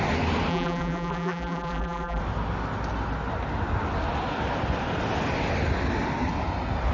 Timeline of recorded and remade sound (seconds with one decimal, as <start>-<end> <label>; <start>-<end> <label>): 0.0-0.5 recorded; 0.5-2.2 remade; 2.2-6.9 recorded